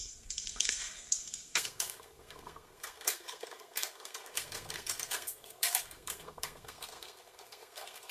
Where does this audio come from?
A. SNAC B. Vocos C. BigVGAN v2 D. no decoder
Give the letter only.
A